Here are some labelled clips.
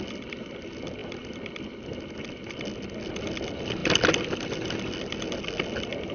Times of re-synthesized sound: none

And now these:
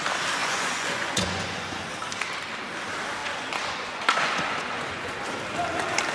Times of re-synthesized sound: 0.4-1.9 (vocoder, Vocos); 3.2-5.3

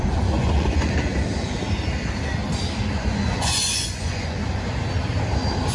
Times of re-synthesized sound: 0.0-1.1 (vocoder, Vocos); 2.8-4.4

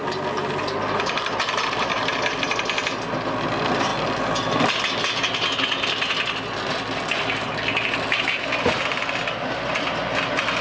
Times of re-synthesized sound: none